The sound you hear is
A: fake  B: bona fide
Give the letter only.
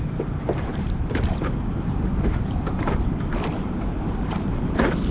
A